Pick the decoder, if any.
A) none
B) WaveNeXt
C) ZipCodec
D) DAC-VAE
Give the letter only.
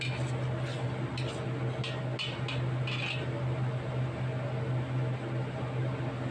A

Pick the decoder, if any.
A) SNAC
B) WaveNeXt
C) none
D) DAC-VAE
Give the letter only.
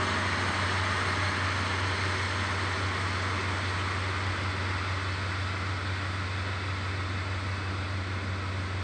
C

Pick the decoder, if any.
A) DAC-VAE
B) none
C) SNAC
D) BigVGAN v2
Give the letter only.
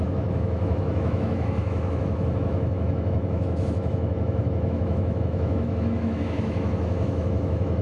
A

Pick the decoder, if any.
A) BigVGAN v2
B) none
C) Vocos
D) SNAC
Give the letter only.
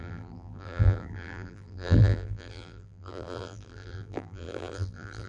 A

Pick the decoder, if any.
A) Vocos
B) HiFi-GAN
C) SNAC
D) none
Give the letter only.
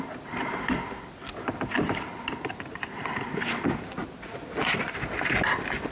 D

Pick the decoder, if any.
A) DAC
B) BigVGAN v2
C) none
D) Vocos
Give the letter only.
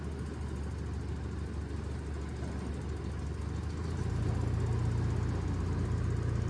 C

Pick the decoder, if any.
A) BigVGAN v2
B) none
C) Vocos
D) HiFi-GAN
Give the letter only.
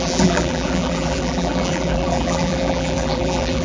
A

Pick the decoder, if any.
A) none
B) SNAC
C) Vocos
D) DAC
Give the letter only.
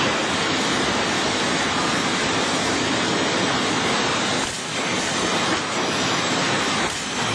A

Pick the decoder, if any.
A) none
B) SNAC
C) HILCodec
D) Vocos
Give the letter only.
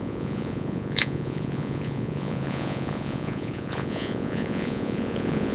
D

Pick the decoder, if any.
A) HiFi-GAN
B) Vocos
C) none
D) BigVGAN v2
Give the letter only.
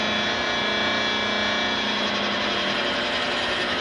C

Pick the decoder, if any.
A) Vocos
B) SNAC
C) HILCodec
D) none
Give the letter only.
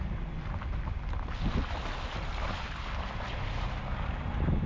D